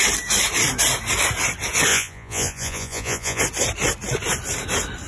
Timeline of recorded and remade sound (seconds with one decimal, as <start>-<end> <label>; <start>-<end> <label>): 0.0-1.9 recorded; 1.9-3.4 remade; 3.4-5.1 recorded